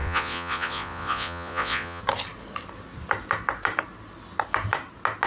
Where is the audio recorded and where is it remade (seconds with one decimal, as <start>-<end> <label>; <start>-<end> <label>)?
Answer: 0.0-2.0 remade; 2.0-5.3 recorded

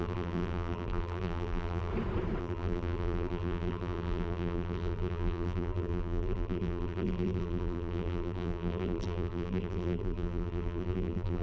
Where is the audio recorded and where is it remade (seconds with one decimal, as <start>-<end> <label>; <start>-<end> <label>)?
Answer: 0.0-1.9 remade; 1.9-2.4 recorded; 2.4-11.4 remade

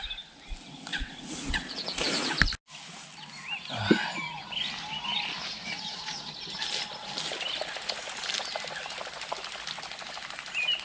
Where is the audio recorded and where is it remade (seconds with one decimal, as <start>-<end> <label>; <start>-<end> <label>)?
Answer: 0.0-0.9 recorded; 0.9-2.3 remade; 2.3-5.6 recorded; 5.6-6.3 remade; 6.3-10.8 recorded

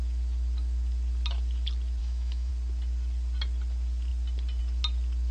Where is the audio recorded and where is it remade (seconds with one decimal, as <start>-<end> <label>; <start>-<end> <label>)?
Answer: 0.0-2.0 recorded; 2.0-2.5 remade; 2.5-5.3 recorded